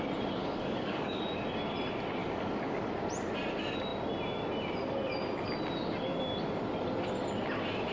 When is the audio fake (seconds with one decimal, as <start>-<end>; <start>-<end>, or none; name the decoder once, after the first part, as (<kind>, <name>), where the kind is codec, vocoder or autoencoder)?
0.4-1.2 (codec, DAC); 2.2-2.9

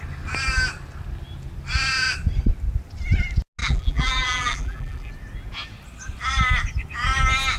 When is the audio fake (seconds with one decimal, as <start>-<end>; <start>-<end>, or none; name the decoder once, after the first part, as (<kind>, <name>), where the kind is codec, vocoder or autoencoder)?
3.6-5.1 (vocoder, BigVGAN v2)

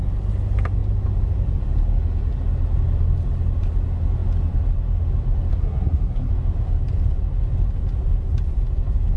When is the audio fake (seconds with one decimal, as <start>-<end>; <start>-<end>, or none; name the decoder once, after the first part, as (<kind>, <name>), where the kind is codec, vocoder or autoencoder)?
5.5-6.3 (codec, SNAC)

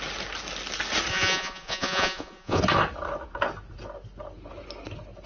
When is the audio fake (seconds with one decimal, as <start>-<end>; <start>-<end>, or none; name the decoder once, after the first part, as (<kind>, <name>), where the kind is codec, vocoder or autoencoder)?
1.1-2.6 (vocoder, Vocos)

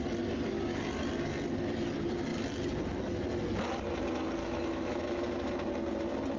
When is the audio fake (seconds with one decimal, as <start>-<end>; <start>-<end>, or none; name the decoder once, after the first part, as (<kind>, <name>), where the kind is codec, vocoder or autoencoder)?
4.4-5.5 (autoencoder, DAC-VAE)

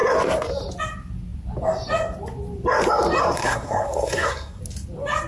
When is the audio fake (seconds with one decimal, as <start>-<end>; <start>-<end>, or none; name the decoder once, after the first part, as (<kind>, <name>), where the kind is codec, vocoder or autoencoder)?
3.2-4.6 (codec, SNAC)

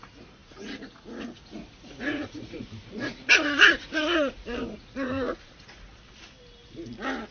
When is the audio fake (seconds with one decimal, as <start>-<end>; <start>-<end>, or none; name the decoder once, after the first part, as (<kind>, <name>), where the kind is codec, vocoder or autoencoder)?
0.0-5.9 (vocoder, Vocos)

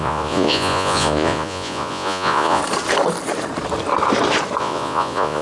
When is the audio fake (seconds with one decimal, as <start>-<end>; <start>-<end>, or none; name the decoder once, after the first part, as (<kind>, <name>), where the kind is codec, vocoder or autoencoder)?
0.0-2.6 (vocoder, Vocos); 4.6-5.4